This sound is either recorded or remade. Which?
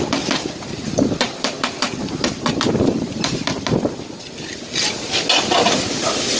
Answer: recorded